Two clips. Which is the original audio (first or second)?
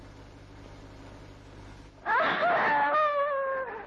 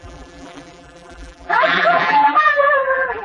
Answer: first